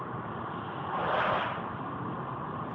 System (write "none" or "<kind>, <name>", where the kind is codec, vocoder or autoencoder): none